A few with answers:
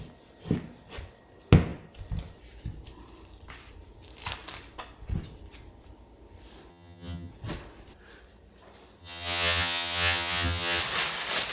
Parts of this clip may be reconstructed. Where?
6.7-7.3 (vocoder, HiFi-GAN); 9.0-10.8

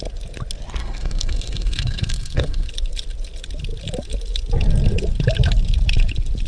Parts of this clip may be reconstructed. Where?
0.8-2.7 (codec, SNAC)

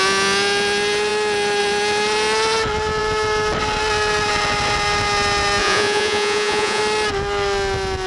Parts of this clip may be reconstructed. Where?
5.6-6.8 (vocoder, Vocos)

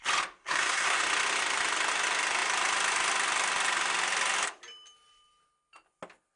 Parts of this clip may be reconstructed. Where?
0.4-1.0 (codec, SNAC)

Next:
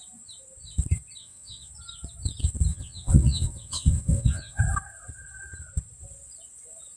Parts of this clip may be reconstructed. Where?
1.2-1.7 (vocoder, WaveNeXt); 2.7-4.6

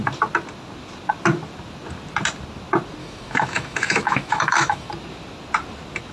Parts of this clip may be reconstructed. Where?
3.0-4.9 (autoencoder, DAC-VAE)